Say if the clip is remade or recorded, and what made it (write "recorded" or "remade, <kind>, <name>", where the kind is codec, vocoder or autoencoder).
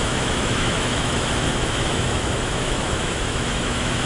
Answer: remade, autoencoder, DAC-VAE